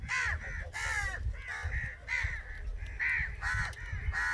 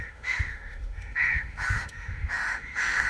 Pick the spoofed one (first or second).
second